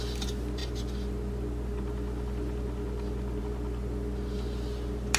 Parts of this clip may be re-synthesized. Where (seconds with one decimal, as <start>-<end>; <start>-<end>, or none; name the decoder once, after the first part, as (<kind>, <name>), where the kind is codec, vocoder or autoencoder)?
none